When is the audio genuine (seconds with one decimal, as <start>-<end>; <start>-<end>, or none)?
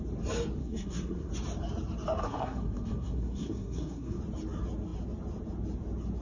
0.0-0.6; 1.3-2.2; 4.2-6.2